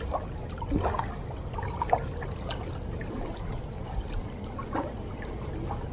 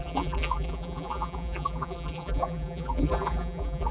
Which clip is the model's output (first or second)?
second